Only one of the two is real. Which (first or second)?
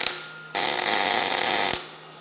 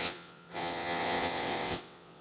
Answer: first